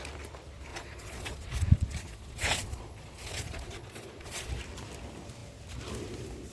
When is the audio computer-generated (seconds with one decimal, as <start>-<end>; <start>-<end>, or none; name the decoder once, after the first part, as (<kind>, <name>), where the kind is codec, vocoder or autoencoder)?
0.7-4.5 (vocoder, Vocos)